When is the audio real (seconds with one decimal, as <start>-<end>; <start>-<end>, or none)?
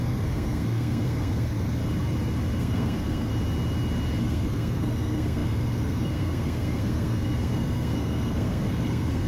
1.8-2.6; 3.3-4.2